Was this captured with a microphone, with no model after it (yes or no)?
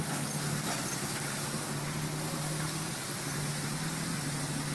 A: yes